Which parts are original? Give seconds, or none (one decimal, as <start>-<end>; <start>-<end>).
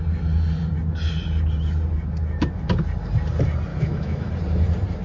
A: 0.0-3.7; 4.3-5.0